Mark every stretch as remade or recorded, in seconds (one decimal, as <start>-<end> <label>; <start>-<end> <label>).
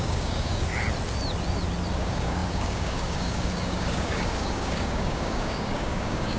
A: 0.0-0.7 remade; 0.7-1.9 recorded; 1.9-6.4 remade